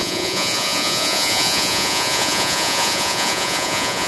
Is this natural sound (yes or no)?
no